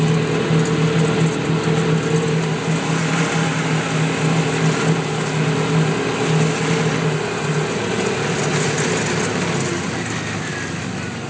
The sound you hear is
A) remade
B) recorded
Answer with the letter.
B